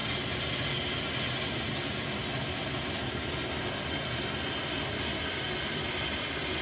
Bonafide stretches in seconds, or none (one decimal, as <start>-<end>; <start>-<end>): 0.0-6.6